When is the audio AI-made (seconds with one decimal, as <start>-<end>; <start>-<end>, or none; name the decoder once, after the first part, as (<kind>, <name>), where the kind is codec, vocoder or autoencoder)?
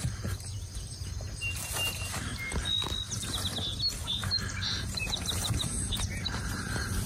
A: 0.0-2.3 (vocoder, BigVGAN v2); 4.0-7.1